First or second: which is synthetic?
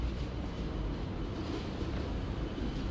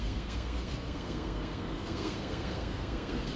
second